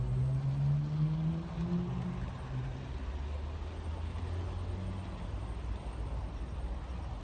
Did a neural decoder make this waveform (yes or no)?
no